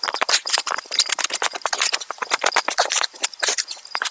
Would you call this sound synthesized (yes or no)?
no